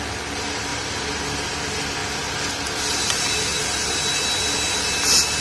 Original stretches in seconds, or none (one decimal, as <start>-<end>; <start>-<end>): 0.0-5.4